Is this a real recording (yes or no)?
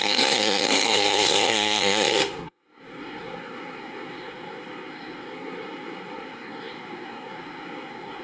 no